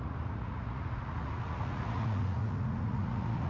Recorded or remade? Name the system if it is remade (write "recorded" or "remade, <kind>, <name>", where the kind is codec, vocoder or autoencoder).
remade, vocoder, Vocos